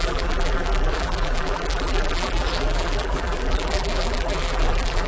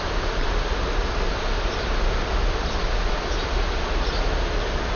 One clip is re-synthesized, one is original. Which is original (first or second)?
second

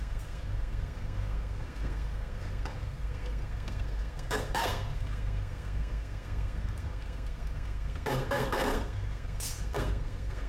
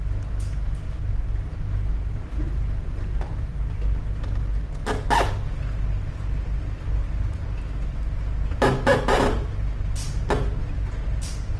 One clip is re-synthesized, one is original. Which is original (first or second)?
second